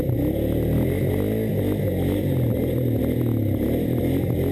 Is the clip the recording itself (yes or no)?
yes